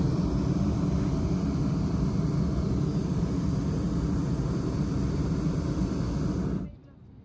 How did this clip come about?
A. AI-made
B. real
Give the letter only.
B